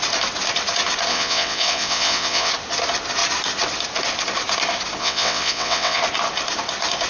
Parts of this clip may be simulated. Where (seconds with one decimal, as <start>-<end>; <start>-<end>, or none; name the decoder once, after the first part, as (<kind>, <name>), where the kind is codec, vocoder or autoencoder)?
1.1-2.5 (vocoder, WaveNeXt); 5.0-6.0